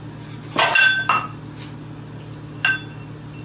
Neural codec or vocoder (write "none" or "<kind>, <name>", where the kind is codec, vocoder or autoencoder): none